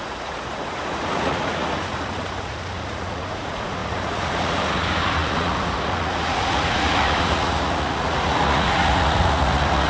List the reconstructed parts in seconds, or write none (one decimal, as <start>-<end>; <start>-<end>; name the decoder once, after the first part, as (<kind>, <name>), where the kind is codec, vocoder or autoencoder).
0.0-9.9 (vocoder, Vocos)